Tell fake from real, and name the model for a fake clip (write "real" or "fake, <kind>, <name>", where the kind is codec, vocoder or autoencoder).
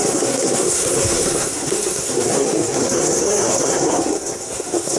fake, codec, SNAC